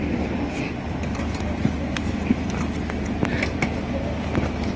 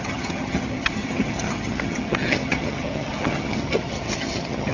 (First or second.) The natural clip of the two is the first